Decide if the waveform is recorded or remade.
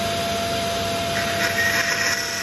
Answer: recorded